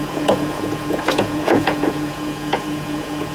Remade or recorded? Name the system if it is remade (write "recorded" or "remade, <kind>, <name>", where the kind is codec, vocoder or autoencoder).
remade, vocoder, Vocos